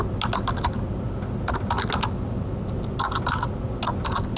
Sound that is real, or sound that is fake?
real